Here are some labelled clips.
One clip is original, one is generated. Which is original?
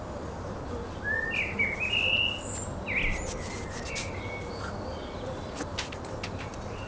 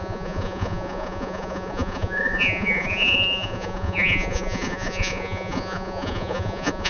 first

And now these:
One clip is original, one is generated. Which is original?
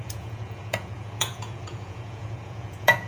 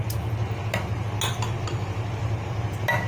second